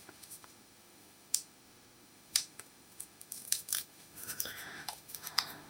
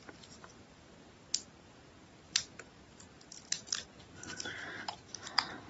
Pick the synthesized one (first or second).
first